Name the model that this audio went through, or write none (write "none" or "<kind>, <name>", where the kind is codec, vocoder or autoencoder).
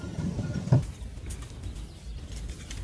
none